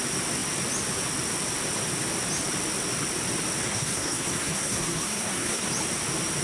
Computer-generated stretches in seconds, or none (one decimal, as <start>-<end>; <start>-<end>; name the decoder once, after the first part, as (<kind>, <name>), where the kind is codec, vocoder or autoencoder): 3.6-5.7 (codec, SNAC)